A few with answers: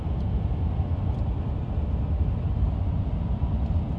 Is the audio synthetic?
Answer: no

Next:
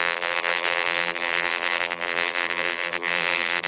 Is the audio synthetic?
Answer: yes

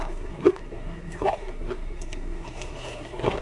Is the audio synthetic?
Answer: yes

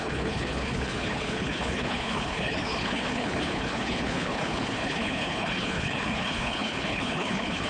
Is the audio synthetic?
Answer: yes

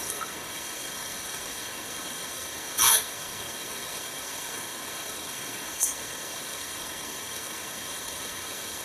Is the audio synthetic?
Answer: yes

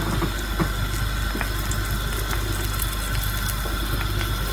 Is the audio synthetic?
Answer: no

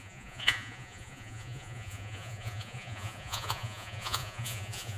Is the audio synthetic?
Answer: yes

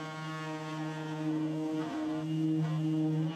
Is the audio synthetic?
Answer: no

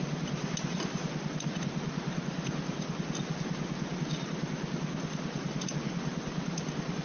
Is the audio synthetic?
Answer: no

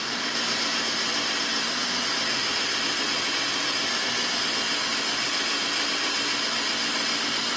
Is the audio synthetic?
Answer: no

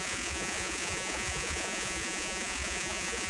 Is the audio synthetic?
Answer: yes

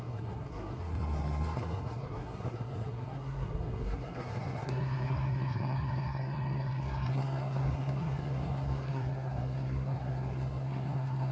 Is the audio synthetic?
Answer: yes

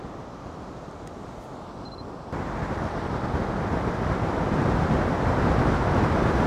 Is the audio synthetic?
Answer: no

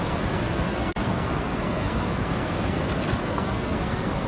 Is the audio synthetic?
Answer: yes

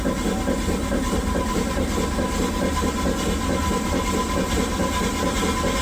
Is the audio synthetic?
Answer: no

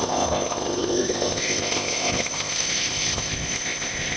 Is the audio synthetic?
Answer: yes